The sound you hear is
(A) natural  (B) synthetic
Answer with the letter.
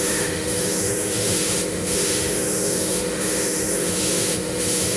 B